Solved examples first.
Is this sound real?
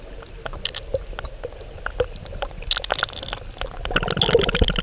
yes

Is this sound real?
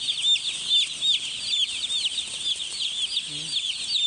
yes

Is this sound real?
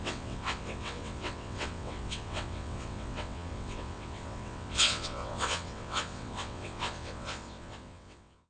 no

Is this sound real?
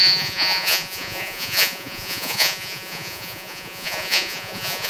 no